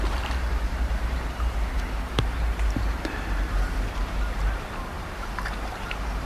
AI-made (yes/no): yes